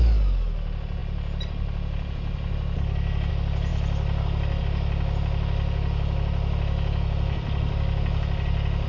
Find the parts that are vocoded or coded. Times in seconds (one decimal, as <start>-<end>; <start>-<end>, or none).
none